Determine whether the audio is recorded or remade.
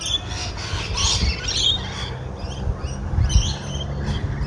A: recorded